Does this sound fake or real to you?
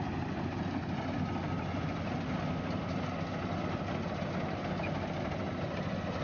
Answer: real